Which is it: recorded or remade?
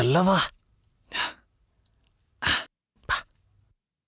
recorded